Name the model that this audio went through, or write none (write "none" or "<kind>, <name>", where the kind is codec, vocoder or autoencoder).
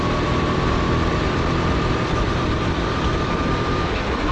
vocoder, BigVGAN v2